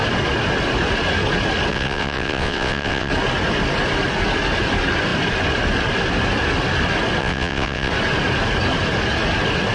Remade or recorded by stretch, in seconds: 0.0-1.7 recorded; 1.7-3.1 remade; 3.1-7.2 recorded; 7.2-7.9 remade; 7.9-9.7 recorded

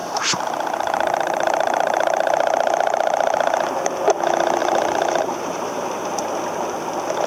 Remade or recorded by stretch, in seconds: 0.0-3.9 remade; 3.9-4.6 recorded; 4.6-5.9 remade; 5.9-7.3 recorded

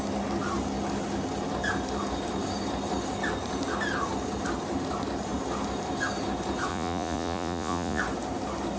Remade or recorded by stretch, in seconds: 0.0-6.7 recorded; 6.7-8.0 remade; 8.0-8.8 recorded

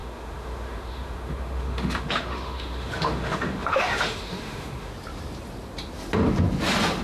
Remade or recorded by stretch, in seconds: 0.0-4.9 remade; 4.9-7.0 recorded

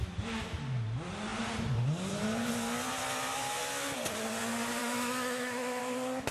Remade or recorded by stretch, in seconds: 0.0-4.8 recorded; 4.8-5.8 remade; 5.8-6.3 recorded

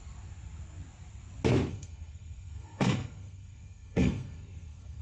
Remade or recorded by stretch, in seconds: 0.0-1.7 recorded; 1.7-5.0 remade